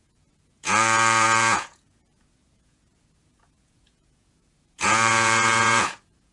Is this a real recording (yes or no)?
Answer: no